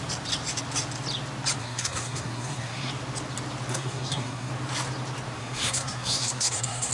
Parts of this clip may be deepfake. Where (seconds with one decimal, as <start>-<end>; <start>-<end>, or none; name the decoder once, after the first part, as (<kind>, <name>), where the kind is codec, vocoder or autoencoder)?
1.6-2.9 (codec, SNAC); 3.7-4.5; 5.4-6.9